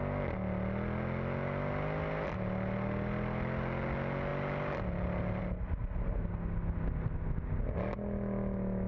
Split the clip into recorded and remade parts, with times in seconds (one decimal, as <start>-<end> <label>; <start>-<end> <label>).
0.0-8.9 recorded